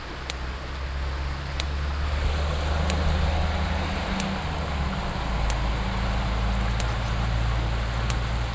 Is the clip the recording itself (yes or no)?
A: yes